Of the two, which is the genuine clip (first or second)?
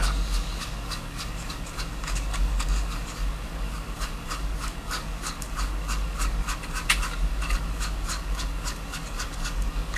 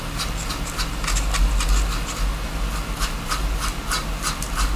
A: second